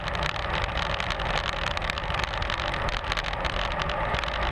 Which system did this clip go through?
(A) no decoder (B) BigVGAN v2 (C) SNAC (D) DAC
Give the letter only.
A